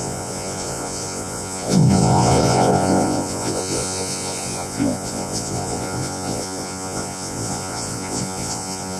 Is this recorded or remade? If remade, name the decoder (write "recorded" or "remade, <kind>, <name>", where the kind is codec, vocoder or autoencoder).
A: remade, vocoder, Vocos